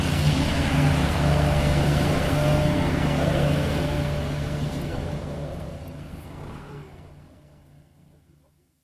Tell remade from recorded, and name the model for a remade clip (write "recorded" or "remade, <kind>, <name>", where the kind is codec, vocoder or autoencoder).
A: remade, codec, SNAC